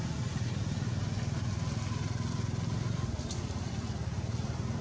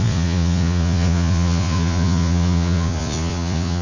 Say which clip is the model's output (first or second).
second